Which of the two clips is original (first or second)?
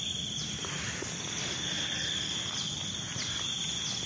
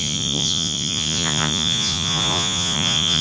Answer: first